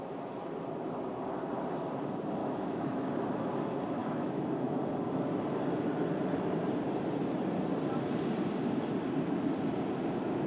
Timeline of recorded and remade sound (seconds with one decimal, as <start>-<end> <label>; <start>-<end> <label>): 0.0-2.4 recorded; 2.4-3.1 remade; 3.1-4.0 recorded; 4.0-4.8 remade; 4.8-10.5 recorded